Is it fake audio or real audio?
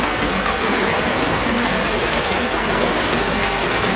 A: fake